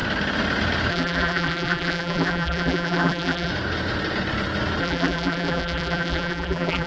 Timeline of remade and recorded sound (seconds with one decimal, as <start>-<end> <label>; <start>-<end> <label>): 0.0-0.9 recorded; 0.9-3.5 remade; 3.5-4.8 recorded; 4.8-6.9 remade